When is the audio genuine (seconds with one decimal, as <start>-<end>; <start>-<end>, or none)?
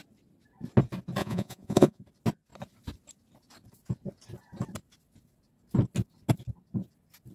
0.0-1.2; 2.0-7.3